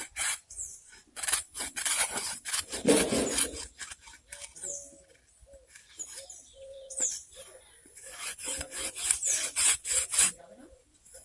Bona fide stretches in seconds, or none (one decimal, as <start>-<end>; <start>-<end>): 3.2-6.5